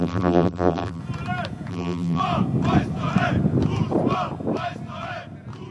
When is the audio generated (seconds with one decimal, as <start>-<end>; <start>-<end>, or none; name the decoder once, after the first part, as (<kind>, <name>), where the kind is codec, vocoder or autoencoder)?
0.0-1.0 (vocoder, BigVGAN v2); 1.7-2.2